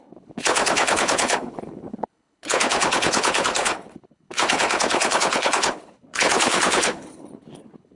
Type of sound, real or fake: fake